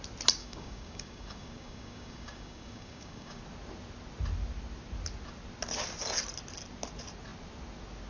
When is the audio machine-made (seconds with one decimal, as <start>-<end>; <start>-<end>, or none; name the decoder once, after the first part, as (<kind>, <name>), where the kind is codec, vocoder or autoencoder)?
0.4-3.4 (codec, DAC)